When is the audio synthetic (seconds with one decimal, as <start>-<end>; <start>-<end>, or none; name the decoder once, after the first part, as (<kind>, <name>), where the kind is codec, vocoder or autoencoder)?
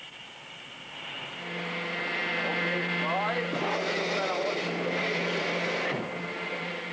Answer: none